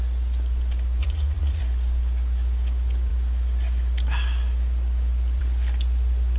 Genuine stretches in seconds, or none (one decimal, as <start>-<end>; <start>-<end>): 0.0-1.0; 1.6-6.4